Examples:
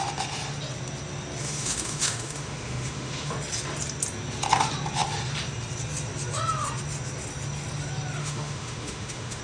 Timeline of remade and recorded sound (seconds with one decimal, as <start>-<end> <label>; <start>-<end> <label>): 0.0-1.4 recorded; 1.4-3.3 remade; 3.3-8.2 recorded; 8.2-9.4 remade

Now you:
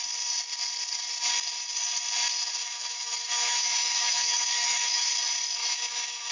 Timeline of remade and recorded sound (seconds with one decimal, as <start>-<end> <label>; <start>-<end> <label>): 0.0-2.6 recorded; 2.6-5.1 remade; 5.1-5.6 recorded; 5.6-6.3 remade

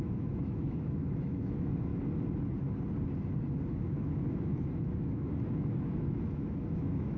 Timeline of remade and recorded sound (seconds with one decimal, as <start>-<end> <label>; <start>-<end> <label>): 0.0-1.9 remade; 1.9-3.7 recorded; 3.7-7.2 remade